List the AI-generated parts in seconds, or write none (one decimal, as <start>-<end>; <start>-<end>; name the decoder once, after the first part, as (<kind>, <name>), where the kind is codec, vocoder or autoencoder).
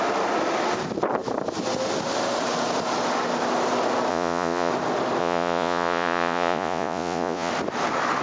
4.1-4.7 (vocoder, Vocos); 5.2-7.5